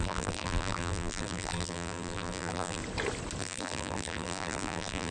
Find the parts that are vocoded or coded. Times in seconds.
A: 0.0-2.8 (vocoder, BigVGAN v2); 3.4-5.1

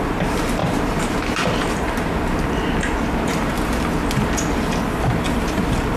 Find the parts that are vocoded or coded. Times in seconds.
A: 0.6-2.1 (vocoder, BigVGAN v2); 3.0-3.5

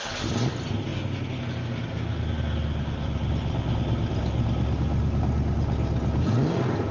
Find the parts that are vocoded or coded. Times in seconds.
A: none

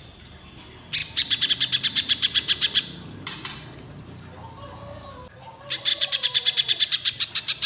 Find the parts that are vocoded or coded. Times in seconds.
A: 1.0-1.5 (vocoder, BigVGAN v2); 1.9-4.0; 5.9-7.7

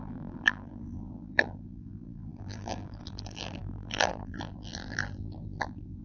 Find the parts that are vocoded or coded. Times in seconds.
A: 0.0-6.0 (vocoder, BigVGAN v2)

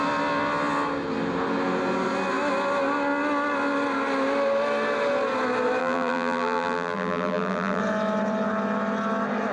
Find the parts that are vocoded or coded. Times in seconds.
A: 5.8-7.8 (vocoder, BigVGAN v2)